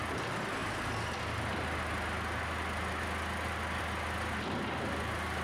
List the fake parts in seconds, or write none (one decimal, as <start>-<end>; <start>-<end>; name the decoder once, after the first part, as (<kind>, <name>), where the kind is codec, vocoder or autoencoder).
none